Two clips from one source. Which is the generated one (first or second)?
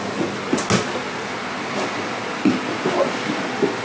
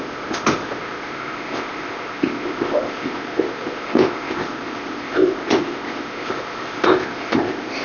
second